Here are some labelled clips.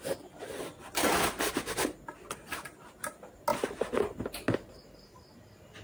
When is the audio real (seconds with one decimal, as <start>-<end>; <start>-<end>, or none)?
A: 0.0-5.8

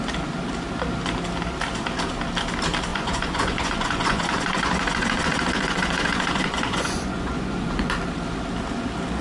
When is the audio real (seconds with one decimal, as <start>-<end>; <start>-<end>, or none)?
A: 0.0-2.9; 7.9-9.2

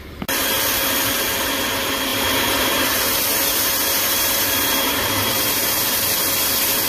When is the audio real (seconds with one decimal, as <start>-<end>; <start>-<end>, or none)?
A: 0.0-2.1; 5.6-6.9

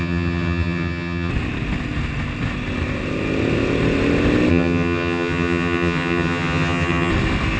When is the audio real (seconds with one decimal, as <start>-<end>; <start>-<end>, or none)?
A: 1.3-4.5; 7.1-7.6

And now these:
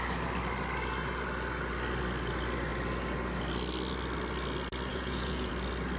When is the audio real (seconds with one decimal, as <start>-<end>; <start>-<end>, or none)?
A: 0.0-4.9; 5.5-6.0

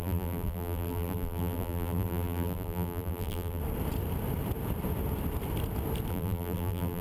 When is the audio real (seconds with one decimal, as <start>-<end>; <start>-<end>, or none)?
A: 3.6-6.1